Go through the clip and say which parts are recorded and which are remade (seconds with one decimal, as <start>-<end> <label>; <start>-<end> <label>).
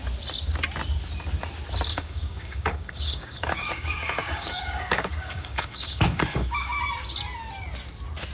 0.0-1.9 recorded; 1.9-6.8 remade; 6.8-8.3 recorded